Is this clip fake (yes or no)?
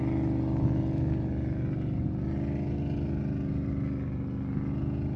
no